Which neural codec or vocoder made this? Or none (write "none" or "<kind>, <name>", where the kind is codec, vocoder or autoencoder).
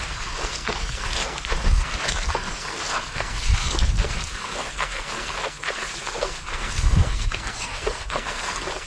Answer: codec, SNAC